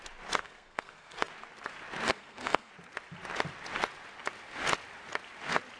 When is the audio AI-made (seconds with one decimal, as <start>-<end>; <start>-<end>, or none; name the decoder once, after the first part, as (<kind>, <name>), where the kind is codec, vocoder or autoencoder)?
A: 0.4-1.3 (codec, SNAC); 2.1-2.7